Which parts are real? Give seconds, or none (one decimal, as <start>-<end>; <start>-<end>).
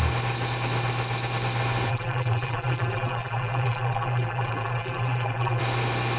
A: 0.0-1.9; 5.6-6.2